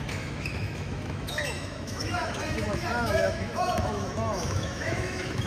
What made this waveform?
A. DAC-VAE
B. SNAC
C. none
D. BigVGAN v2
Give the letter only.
A